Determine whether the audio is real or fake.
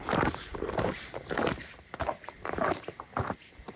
fake